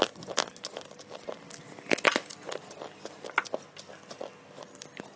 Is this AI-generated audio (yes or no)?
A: no